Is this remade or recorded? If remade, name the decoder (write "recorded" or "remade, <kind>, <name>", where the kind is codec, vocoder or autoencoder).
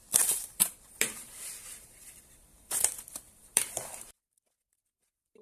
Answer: remade, vocoder, BigVGAN v2